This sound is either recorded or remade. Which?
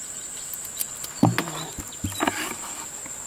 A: recorded